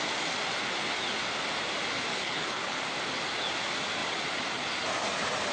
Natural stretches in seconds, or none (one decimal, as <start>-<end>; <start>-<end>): 0.0-2.1; 2.8-5.5